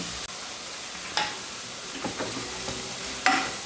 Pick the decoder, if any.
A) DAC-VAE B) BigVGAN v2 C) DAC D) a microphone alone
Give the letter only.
D